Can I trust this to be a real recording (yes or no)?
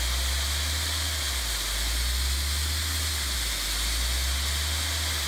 yes